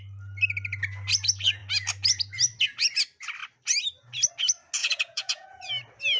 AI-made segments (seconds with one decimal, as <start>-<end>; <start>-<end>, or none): 4.8-5.7